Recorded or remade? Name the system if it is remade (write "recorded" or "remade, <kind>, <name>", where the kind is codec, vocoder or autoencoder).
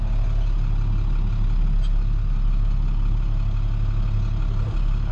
recorded